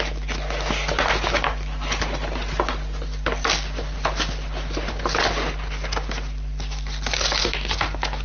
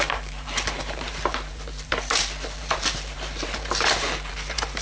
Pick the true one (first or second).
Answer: first